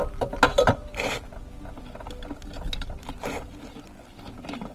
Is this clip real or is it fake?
real